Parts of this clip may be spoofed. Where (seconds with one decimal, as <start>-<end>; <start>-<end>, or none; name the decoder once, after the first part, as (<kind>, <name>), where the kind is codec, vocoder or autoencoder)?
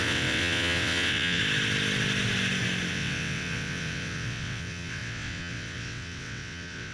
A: 0.0-1.4 (vocoder, WaveNeXt); 2.9-6.9